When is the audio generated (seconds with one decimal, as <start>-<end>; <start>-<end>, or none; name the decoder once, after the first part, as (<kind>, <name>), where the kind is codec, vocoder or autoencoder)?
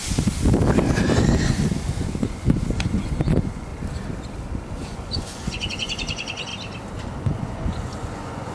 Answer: 1.2-3.7 (vocoder, Vocos); 4.7-6.5; 7.2-8.5